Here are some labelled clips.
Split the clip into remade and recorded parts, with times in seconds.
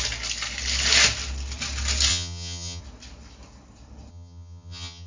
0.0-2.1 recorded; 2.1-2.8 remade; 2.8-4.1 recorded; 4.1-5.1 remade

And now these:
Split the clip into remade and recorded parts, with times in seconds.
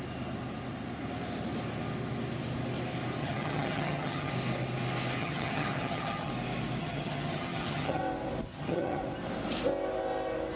0.0-3.2 recorded; 3.2-4.3 remade; 4.3-5.2 recorded; 5.2-6.3 remade; 6.3-6.8 recorded; 6.8-8.0 remade; 8.0-8.5 recorded; 8.5-9.0 remade; 9.0-10.6 recorded